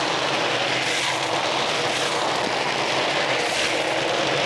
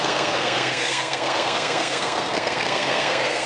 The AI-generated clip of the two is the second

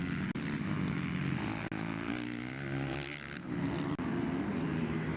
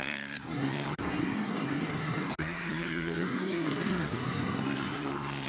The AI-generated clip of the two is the second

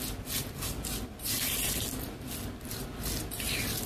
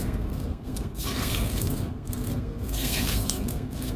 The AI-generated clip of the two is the second